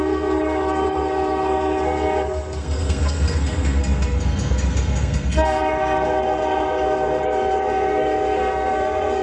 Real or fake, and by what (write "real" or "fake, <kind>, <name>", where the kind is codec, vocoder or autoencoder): fake, codec, SNAC